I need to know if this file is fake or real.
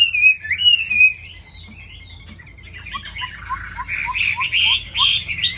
real